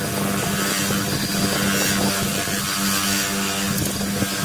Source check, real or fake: real